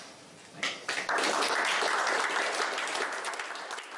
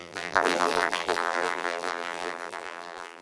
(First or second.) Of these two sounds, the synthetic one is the second